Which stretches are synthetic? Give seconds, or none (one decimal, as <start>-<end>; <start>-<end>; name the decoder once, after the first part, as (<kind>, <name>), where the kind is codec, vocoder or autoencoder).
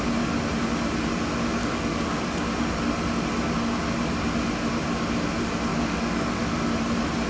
1.6-2.5 (codec, DAC); 5.7-6.6